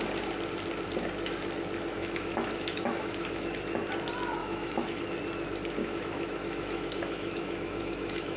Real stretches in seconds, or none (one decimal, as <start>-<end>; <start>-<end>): 0.0-2.0; 3.6-4.4; 5.0-5.8